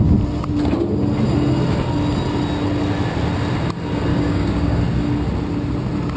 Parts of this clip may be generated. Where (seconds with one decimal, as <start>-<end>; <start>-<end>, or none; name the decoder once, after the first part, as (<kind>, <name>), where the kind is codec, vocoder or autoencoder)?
4.1-4.8 (codec, DAC)